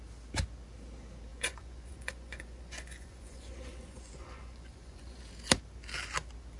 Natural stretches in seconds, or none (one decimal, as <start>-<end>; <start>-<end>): 0.0-1.3; 5.2-6.6